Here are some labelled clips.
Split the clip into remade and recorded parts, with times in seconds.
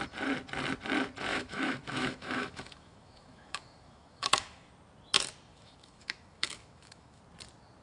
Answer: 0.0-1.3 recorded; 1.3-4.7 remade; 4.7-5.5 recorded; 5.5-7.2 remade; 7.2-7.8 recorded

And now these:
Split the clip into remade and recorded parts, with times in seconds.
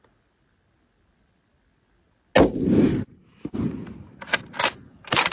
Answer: 0.0-5.3 recorded